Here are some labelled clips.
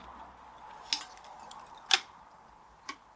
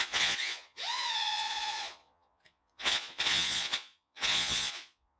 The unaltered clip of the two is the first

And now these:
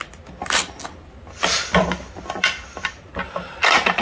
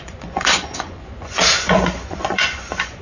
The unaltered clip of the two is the first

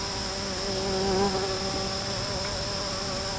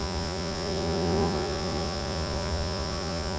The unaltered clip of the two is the first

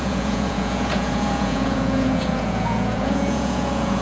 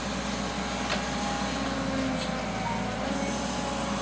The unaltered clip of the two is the second